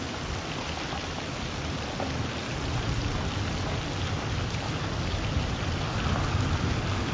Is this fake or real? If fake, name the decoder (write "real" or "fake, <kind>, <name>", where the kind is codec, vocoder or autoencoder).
real